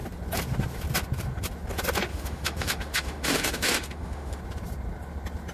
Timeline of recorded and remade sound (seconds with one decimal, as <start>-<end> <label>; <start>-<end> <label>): 0.0-2.1 recorded; 2.1-4.4 remade; 4.4-5.5 recorded